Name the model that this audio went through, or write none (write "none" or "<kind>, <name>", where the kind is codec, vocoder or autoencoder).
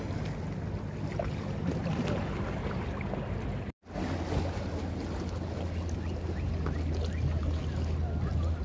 none